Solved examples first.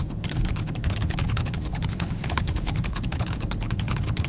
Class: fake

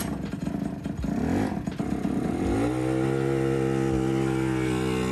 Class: real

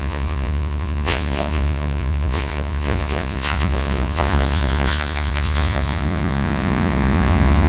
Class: fake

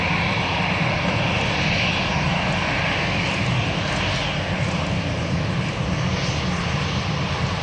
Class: real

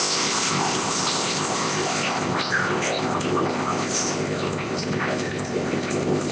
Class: fake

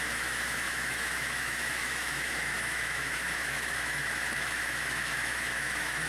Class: fake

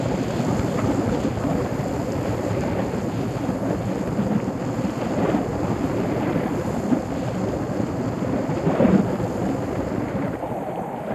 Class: real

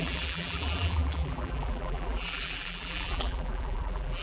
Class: fake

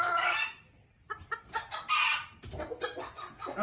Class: real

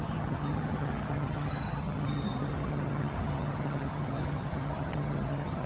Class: fake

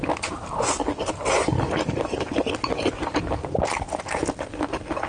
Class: real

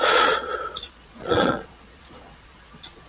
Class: fake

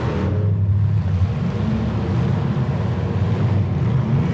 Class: real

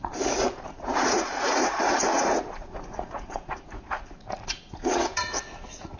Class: fake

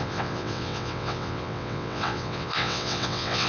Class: fake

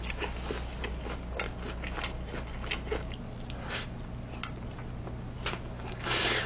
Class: real